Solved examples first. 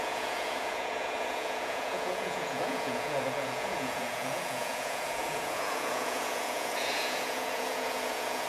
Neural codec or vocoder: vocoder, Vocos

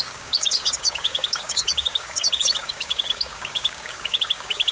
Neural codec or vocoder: codec, DAC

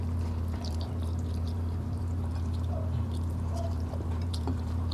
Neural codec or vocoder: vocoder, BigVGAN v2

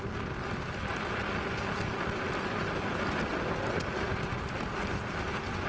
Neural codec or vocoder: none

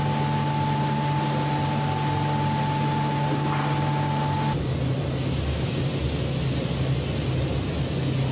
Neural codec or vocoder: none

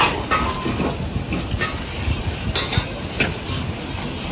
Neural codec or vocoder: none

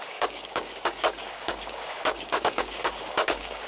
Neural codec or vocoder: codec, DAC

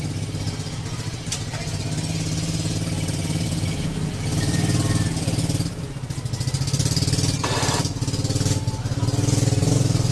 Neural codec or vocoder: none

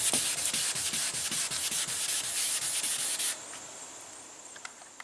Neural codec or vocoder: none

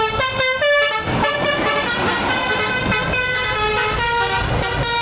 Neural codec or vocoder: none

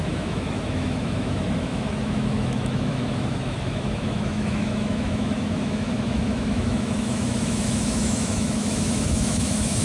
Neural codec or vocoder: autoencoder, DAC-VAE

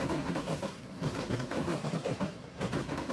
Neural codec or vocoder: codec, SNAC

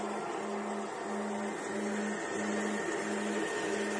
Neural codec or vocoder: none